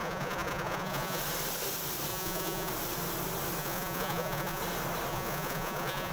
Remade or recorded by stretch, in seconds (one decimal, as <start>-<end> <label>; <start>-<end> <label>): 0.0-1.2 remade; 1.2-2.1 recorded; 2.1-2.7 remade; 2.7-3.6 recorded; 3.6-4.6 remade; 4.6-5.1 recorded; 5.1-6.1 remade